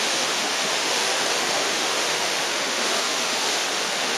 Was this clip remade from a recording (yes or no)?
yes